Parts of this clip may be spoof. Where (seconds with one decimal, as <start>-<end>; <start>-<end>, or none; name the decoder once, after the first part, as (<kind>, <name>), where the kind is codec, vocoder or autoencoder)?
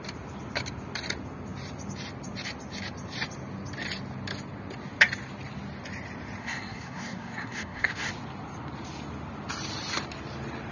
6.4-8.1 (codec, SNAC)